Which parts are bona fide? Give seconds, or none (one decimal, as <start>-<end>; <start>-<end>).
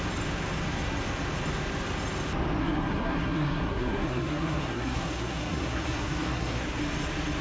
0.0-2.6; 6.8-7.4